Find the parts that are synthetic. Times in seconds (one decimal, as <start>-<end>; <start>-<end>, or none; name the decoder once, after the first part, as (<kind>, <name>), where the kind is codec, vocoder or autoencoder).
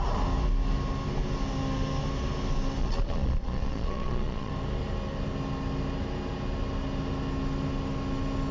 2.8-4.5 (vocoder, Vocos)